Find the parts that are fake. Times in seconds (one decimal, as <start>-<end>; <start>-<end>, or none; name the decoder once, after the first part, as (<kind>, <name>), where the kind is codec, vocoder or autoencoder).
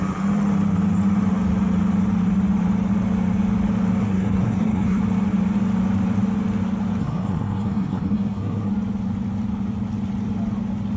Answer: 4.0-5.0 (codec, SNAC); 7.0-8.7